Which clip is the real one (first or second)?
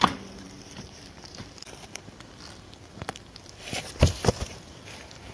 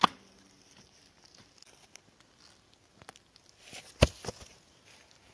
second